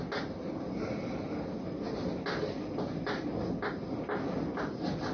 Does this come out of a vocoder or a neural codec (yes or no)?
no